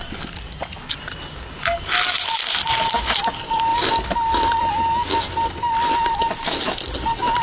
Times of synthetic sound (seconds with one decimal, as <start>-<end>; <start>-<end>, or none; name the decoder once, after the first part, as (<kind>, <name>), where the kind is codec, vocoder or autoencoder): none